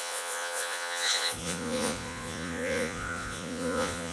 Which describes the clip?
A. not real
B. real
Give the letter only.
A